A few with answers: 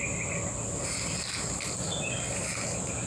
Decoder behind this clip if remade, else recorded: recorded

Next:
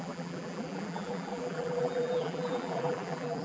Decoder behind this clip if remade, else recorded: remade, vocoder, BigVGAN v2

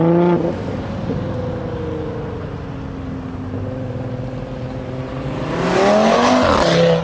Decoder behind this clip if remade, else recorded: recorded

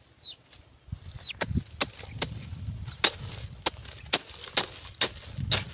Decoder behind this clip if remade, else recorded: recorded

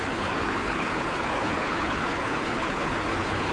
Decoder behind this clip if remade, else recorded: remade, codec, HILCodec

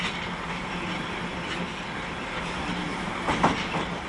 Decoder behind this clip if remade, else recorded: recorded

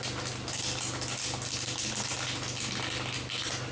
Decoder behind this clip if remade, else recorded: recorded